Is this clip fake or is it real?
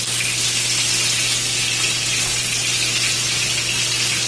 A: real